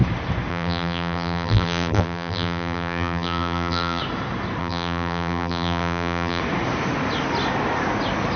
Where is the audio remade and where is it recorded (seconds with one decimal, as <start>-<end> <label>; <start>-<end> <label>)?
0.0-0.5 recorded; 0.5-4.0 remade; 4.0-4.6 recorded; 4.6-6.4 remade; 6.4-8.4 recorded